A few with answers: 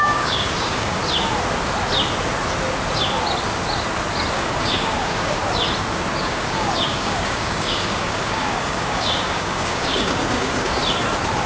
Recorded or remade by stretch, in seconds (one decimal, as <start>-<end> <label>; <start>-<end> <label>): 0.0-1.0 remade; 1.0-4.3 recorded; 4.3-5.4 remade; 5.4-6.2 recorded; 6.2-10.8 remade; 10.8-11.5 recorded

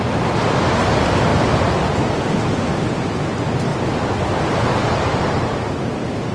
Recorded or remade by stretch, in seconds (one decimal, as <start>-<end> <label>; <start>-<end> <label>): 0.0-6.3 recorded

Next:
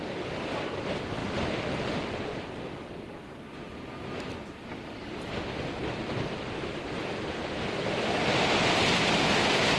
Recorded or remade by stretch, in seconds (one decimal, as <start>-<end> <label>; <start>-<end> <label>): 0.0-9.8 recorded

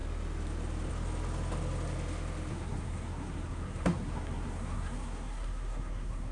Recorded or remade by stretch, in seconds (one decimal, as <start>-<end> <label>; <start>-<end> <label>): 0.0-2.5 recorded; 2.5-6.3 remade